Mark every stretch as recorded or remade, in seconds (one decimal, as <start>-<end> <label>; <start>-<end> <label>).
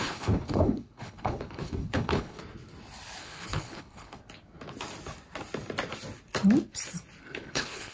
0.0-2.4 remade; 2.4-3.2 recorded; 3.2-4.2 remade; 4.2-7.2 recorded; 7.2-7.9 remade